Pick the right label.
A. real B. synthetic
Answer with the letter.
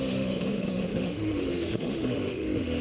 B